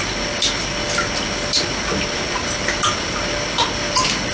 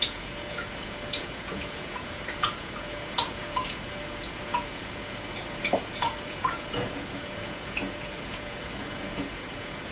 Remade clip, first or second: second